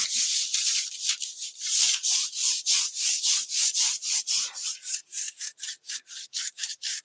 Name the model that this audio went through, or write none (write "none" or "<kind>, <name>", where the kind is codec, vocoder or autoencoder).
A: vocoder, BigVGAN v2